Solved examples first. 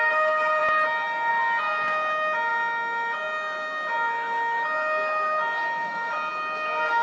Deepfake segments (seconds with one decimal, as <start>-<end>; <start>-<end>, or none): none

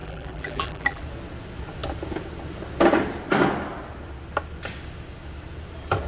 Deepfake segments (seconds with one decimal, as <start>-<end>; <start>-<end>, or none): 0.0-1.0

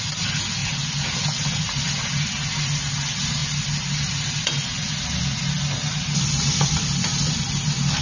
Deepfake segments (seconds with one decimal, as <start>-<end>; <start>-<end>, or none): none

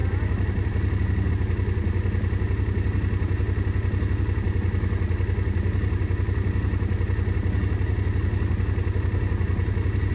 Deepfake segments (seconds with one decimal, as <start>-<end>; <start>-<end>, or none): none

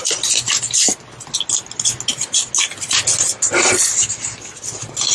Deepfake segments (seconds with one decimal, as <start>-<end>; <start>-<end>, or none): none